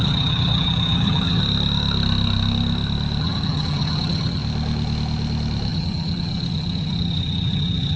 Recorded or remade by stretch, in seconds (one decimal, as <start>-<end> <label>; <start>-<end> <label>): 0.0-1.4 remade; 1.4-3.2 recorded; 3.2-4.4 remade; 4.4-5.7 recorded; 5.7-8.0 remade